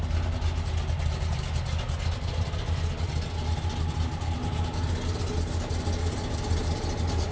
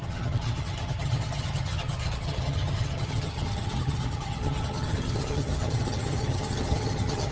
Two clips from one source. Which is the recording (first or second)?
first